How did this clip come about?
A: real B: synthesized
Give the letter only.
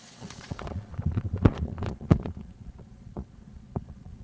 B